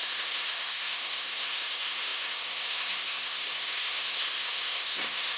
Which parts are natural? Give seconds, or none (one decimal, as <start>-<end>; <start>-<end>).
none

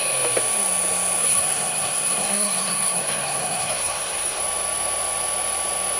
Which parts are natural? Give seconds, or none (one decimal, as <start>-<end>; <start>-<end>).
0.0-1.2; 4.4-6.0

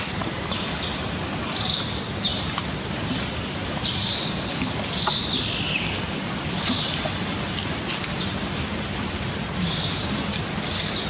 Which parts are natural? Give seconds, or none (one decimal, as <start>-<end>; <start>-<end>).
0.0-11.1

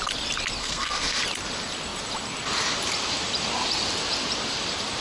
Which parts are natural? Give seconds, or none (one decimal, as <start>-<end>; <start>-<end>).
0.0-0.6; 1.2-5.0

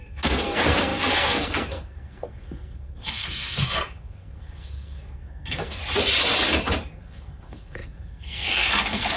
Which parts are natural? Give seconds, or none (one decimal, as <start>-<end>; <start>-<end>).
5.8-6.8

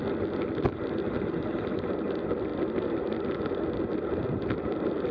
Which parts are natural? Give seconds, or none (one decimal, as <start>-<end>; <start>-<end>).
0.0-5.1

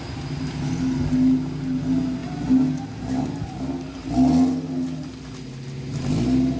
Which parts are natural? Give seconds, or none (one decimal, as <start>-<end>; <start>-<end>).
0.0-6.6